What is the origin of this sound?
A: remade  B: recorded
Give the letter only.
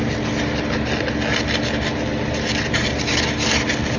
B